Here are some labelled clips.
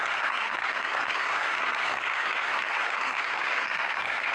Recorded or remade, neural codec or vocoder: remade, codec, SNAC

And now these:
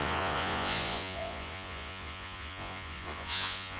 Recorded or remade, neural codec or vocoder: remade, vocoder, Vocos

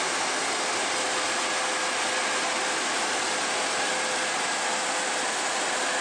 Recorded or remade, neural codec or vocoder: recorded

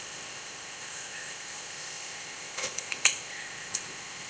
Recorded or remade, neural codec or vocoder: remade, codec, ZipCodec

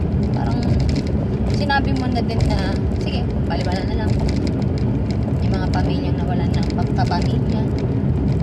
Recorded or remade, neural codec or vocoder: recorded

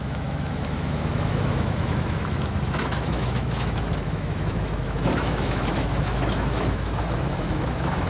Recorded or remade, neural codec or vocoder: remade, autoencoder, DAC-VAE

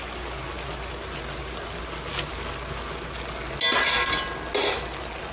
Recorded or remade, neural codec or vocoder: recorded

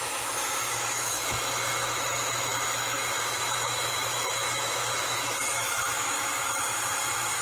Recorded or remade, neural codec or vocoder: remade, autoencoder, DAC-VAE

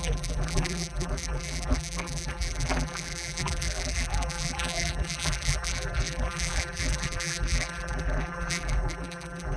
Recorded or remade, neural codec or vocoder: remade, vocoder, BigVGAN v2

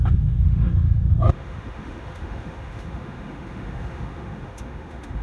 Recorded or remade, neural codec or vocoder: remade, autoencoder, DAC-VAE